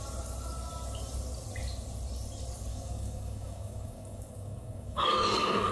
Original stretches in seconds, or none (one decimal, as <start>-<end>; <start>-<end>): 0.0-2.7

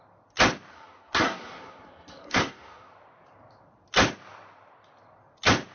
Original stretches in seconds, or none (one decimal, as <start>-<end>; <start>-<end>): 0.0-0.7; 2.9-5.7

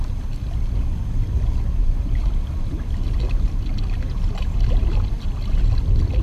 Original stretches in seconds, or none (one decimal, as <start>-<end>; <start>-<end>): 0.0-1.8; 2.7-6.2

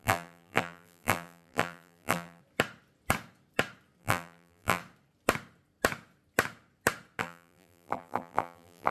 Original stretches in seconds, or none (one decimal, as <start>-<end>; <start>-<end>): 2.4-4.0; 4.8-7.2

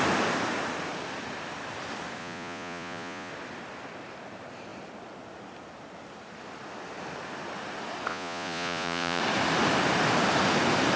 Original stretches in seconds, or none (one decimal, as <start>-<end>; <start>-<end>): 0.0-2.2; 3.3-8.1; 9.2-11.0

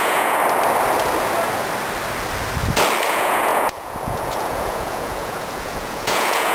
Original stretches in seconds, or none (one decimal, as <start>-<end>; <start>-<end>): 0.4-3.1